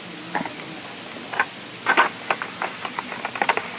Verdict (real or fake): real